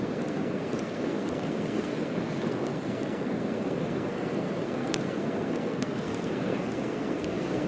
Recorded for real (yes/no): no